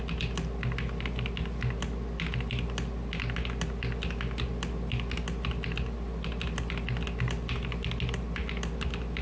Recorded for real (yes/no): yes